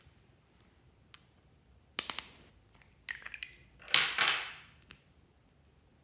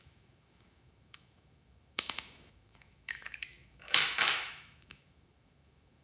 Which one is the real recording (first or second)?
first